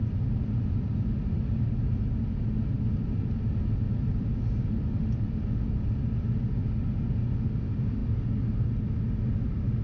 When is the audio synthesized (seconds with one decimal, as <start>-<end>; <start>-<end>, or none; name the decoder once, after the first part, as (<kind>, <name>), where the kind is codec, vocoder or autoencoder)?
none